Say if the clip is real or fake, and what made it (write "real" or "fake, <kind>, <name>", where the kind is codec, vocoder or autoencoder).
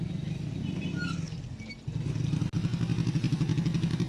real